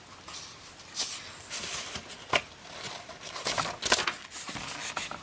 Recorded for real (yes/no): yes